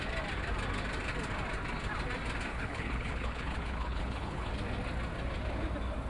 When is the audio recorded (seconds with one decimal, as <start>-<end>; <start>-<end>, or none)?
0.0-2.5; 4.5-6.1